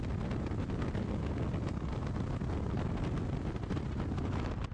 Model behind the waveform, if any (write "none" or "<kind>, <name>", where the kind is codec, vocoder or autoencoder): none